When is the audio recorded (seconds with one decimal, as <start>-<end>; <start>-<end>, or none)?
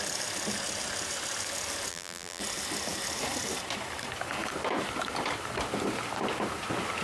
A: 0.0-1.9; 2.4-7.0